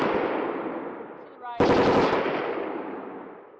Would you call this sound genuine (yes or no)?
yes